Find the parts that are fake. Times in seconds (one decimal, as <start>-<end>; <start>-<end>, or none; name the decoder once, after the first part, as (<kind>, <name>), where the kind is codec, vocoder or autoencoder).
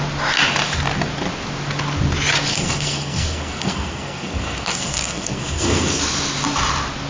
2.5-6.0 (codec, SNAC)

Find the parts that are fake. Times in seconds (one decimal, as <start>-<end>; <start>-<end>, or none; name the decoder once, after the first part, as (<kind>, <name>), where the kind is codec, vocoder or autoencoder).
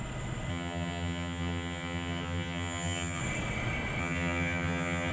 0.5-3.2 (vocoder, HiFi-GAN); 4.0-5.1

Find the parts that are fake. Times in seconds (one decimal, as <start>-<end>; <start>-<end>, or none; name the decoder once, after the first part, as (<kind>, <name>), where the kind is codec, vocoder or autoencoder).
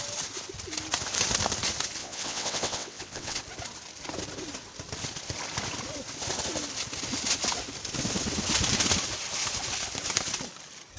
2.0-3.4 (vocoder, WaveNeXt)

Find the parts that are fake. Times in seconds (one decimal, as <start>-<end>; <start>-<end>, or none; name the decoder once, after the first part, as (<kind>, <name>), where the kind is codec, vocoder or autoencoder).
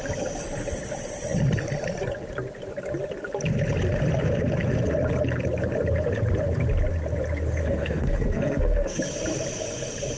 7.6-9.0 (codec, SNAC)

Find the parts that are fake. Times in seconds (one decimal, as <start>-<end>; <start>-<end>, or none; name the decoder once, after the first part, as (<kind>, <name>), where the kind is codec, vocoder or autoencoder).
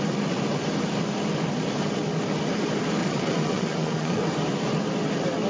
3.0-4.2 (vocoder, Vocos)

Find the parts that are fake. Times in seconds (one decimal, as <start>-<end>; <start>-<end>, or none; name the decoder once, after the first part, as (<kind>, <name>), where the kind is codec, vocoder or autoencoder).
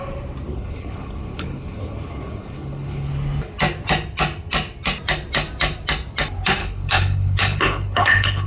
0.5-3.1 (codec, HILCodec); 6.6-8.5